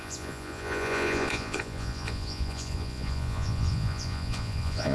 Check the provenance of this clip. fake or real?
fake